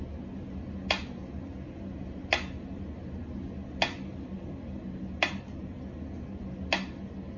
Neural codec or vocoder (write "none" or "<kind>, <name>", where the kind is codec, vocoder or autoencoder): none